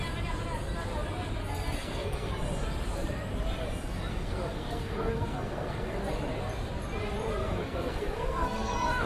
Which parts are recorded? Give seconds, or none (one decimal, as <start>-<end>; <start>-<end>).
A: 0.0-1.4; 2.3-4.1; 6.0-7.4